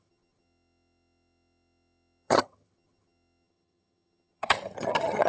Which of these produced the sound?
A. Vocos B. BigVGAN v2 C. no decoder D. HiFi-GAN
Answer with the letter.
D